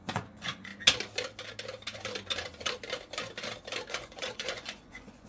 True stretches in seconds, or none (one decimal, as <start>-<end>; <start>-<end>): 0.7-3.9